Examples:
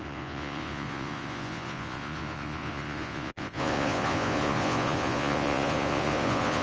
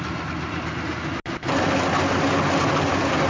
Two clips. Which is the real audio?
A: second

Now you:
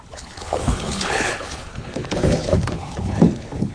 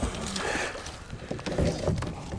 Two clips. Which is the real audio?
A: second